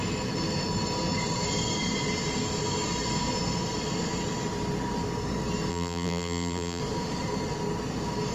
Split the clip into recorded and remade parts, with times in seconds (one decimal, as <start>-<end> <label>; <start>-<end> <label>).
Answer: 0.0-5.7 recorded; 5.7-6.8 remade; 6.8-8.3 recorded